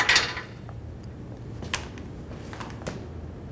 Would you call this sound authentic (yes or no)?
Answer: yes